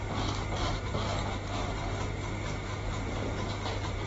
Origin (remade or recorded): recorded